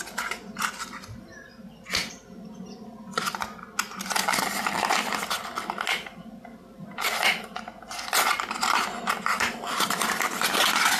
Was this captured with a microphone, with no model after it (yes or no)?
yes